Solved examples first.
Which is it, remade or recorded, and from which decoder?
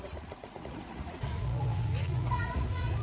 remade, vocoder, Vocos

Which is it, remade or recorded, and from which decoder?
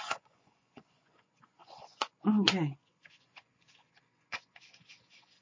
remade, vocoder, Vocos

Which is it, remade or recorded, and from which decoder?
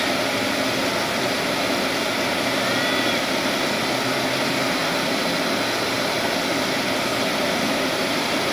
recorded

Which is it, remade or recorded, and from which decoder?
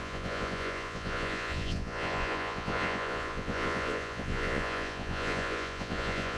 remade, vocoder, Vocos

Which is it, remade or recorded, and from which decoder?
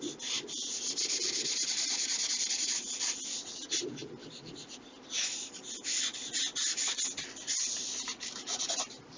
recorded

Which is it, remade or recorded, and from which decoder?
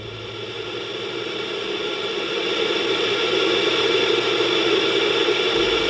recorded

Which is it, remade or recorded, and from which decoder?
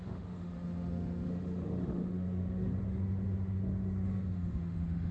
remade, autoencoder, DAC-VAE